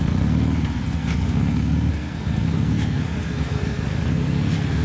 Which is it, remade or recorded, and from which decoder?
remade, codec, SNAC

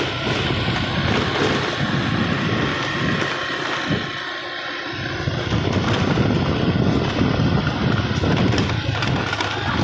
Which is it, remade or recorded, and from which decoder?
recorded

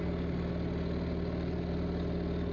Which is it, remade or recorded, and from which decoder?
recorded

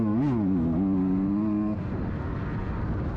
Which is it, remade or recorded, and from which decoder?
recorded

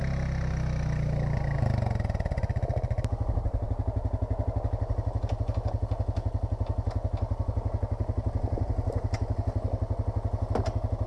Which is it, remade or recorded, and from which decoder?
recorded